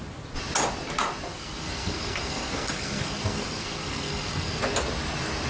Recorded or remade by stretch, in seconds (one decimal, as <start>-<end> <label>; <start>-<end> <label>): 0.0-1.3 recorded; 1.3-4.6 remade; 4.6-5.5 recorded